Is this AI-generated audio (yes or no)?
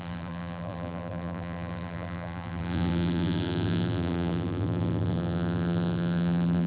yes